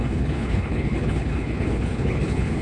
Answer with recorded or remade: remade